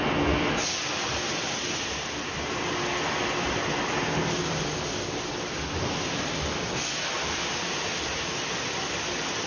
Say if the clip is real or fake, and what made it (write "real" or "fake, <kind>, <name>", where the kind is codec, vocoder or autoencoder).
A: real